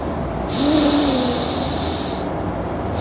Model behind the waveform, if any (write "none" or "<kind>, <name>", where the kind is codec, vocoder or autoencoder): none